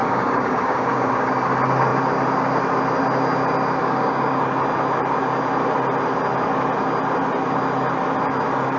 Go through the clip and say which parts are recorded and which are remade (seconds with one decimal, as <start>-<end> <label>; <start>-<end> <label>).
0.0-1.3 remade; 1.3-3.8 recorded; 3.8-4.4 remade; 4.4-8.8 recorded